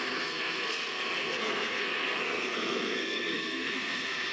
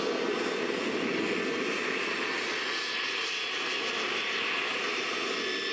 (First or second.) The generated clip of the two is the first